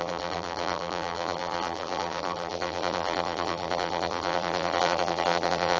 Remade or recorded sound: remade